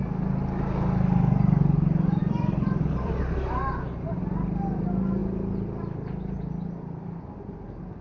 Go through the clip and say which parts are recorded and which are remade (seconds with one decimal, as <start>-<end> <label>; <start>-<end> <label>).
0.0-2.2 recorded; 2.2-3.2 remade; 3.2-8.0 recorded